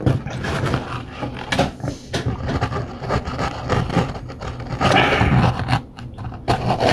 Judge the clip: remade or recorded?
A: recorded